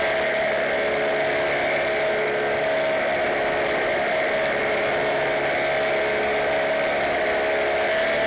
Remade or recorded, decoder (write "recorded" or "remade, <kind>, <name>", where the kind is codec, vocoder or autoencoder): recorded